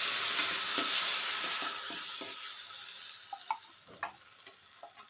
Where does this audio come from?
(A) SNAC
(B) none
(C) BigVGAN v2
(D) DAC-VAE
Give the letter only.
B